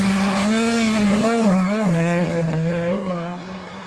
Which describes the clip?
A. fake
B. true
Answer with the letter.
A